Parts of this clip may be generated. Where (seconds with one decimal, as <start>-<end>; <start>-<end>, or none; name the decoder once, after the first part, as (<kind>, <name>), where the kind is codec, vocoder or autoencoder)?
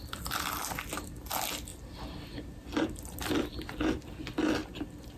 none